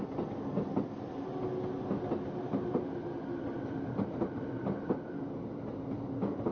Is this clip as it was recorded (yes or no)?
yes